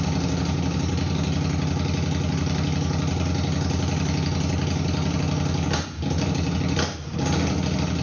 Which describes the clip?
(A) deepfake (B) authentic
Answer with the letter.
B